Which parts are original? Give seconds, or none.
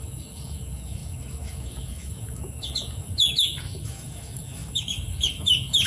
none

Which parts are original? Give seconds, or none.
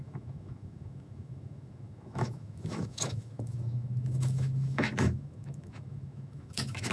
none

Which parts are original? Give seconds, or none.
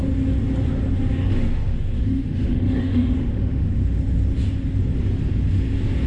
0.0-1.2; 4.0-6.1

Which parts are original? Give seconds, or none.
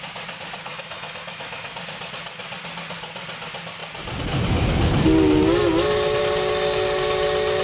0.0-0.7; 1.7-7.6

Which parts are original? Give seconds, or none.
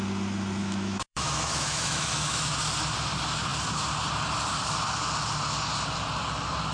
0.0-0.6; 2.6-6.7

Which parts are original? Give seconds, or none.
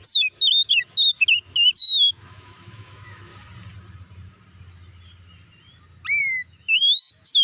3.3-6.2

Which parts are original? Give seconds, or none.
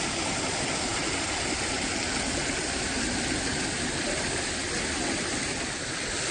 0.0-6.3